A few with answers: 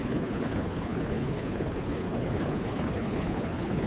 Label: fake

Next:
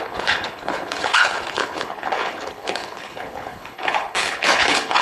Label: fake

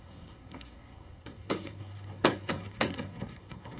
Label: fake